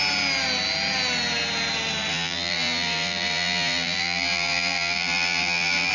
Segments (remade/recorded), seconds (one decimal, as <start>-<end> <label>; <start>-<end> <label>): 0.0-2.1 recorded; 2.1-5.9 remade